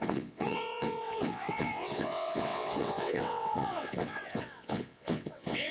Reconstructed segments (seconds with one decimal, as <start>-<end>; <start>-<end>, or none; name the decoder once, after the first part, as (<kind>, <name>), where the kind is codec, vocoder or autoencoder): 0.0-5.7 (vocoder, WaveNeXt)